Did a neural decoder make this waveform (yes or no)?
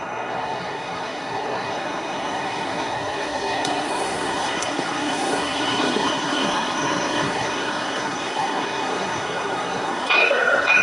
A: yes